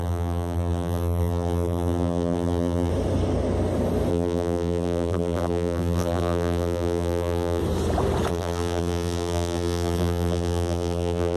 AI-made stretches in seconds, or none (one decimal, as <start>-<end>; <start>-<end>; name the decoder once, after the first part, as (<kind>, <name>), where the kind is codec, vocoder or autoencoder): 0.0-2.9 (vocoder, BigVGAN v2); 4.1-7.6; 8.3-11.4